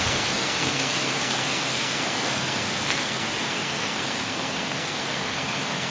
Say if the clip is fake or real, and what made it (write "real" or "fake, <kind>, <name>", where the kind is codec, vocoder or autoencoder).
fake, codec, SNAC